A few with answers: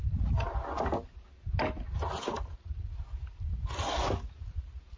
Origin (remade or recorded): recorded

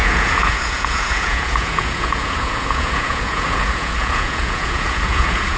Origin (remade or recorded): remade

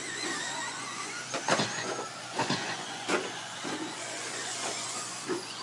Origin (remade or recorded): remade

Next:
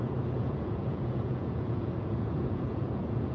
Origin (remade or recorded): remade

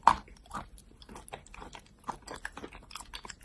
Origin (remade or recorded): recorded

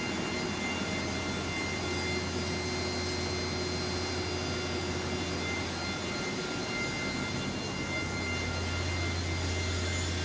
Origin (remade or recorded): recorded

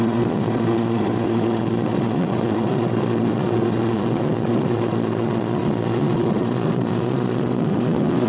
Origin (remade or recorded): remade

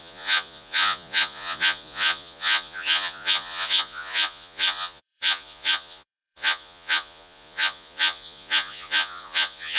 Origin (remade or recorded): remade